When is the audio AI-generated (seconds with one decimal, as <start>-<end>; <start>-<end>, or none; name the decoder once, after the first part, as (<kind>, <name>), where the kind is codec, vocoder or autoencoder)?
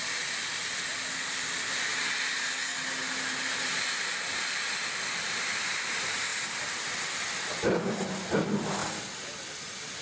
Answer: none